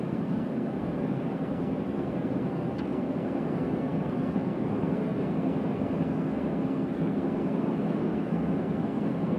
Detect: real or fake fake